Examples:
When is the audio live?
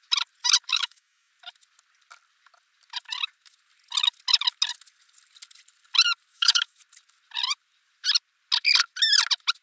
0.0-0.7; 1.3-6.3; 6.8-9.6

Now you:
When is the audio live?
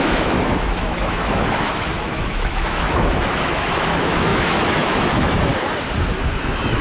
5.5-6.3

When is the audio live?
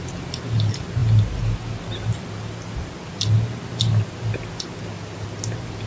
0.0-5.9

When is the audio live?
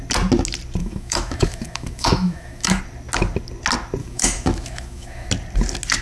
0.0-0.8; 2.8-4.0; 5.3-6.0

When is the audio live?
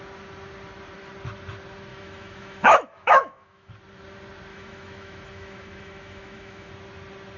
0.0-1.9; 3.7-4.5; 6.7-7.4